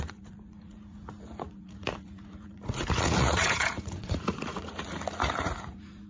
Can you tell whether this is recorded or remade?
remade